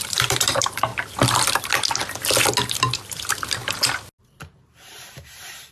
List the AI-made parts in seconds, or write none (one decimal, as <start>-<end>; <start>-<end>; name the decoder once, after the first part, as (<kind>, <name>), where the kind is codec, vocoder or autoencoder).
0.0-0.9 (vocoder, BigVGAN v2); 4.3-5.7